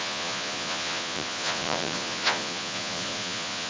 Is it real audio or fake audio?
fake